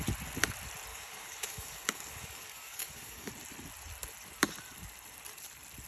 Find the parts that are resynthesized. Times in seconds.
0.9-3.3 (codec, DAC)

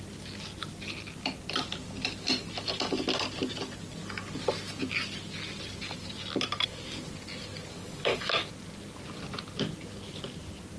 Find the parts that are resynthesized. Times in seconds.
7.8-8.5 (codec, DAC)

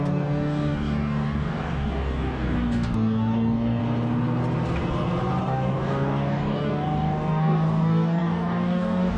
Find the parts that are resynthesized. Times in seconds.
0.0-3.8 (codec, DAC); 5.4-9.2

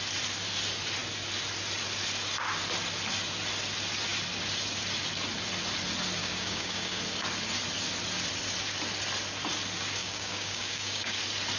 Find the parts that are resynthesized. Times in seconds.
6.2-7.0 (codec, DAC); 10.0-11.2

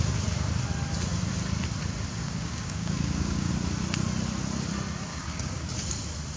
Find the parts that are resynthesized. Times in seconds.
2.2-3.5 (codec, DAC); 5.1-5.7

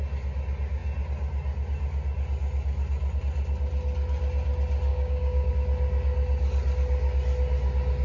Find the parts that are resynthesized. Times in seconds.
4.9-5.5 (codec, DAC)